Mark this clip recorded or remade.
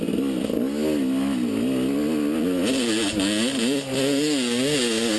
recorded